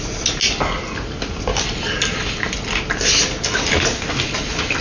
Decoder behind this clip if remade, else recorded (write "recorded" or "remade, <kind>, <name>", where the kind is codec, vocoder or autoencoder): recorded